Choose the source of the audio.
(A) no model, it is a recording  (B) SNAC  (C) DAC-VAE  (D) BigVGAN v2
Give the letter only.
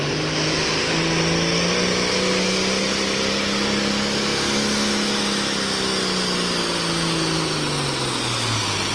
A